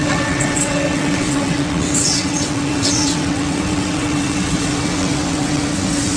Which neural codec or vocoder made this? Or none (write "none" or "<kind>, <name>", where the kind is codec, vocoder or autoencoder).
vocoder, WaveNeXt